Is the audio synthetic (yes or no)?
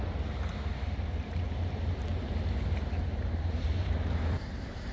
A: yes